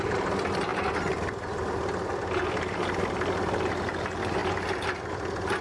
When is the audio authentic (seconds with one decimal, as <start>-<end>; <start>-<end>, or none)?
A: 0.0-5.6